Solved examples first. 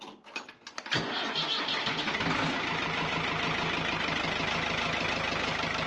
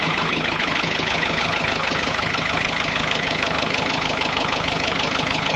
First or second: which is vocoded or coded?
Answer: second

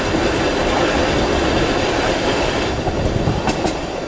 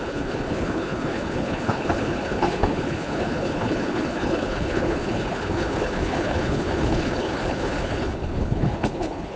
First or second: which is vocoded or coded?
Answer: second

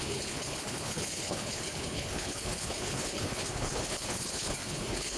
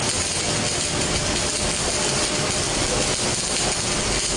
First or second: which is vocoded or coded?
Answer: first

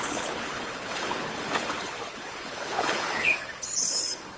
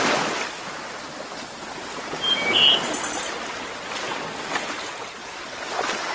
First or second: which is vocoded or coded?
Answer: first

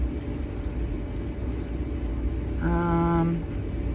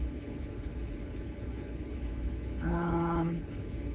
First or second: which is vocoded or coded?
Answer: second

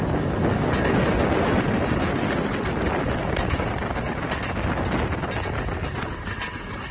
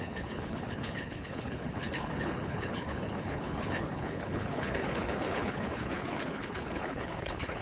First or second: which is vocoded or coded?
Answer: second